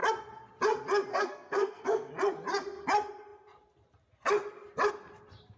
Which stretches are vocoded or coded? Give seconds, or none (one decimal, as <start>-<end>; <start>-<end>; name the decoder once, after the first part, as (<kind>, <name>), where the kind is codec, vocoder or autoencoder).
1.1-2.1 (codec, SNAC)